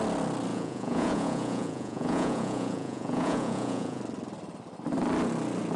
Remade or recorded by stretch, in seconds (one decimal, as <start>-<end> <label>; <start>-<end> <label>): 0.0-0.5 recorded; 0.5-4.0 remade; 4.0-5.8 recorded